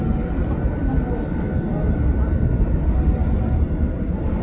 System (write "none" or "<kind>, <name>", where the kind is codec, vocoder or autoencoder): none